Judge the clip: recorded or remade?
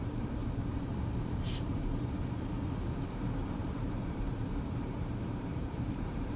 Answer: remade